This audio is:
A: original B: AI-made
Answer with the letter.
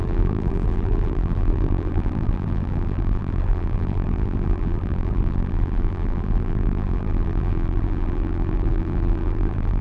B